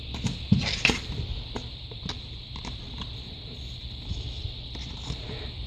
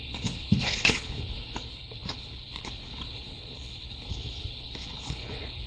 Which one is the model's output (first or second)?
second